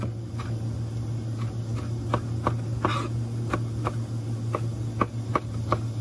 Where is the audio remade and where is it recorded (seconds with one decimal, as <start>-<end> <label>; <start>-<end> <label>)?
0.0-6.0 recorded